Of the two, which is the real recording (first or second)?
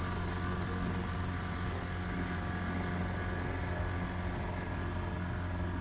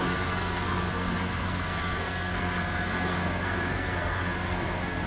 first